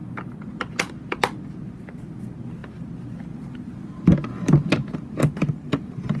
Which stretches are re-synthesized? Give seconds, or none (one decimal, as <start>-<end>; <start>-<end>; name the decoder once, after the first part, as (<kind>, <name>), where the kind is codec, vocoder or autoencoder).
none